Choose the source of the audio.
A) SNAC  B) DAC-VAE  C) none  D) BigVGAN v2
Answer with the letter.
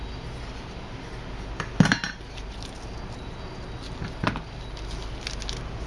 C